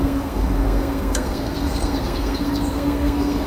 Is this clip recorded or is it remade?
remade